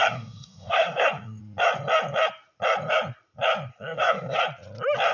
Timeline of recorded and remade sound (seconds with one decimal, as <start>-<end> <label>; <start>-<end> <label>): 0.0-1.4 remade; 1.4-3.7 recorded; 3.7-4.4 remade; 4.4-5.1 recorded

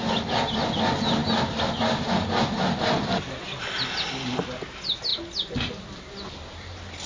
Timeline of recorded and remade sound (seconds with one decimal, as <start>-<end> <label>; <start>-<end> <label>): 0.0-7.1 recorded

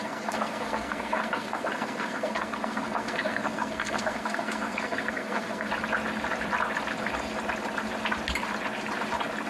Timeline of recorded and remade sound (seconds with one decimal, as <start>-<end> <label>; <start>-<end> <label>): 0.0-5.7 remade; 5.7-9.5 recorded

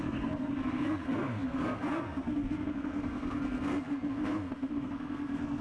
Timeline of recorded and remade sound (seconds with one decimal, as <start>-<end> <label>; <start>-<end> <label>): 0.0-5.6 remade

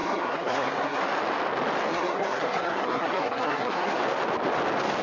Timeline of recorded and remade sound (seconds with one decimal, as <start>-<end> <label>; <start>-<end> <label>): 0.0-1.0 remade; 1.0-1.9 recorded; 1.9-4.0 remade; 4.0-5.0 recorded